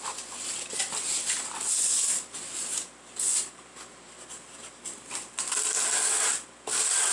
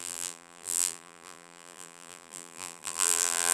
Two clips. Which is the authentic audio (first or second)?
first